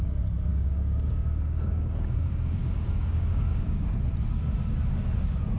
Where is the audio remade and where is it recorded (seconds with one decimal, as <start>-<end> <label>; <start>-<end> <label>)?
0.0-0.5 recorded; 0.5-3.9 remade; 3.9-5.6 recorded